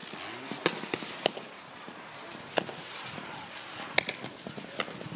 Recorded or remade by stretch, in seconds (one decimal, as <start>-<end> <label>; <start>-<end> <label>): 0.0-5.2 recorded